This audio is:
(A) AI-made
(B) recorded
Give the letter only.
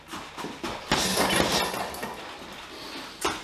B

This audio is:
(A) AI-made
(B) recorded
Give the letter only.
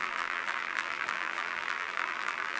A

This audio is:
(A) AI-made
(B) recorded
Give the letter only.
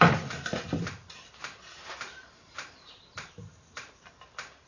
A